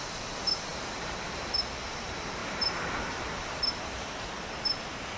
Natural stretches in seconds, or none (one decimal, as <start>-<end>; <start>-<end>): 0.0-5.2